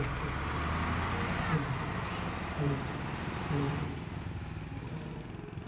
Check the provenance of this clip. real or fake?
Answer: real